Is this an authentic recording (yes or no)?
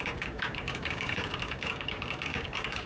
no